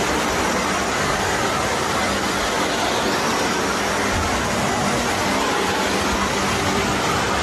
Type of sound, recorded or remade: recorded